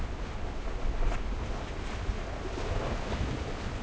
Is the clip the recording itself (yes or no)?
yes